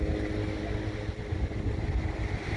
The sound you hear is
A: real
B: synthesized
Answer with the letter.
A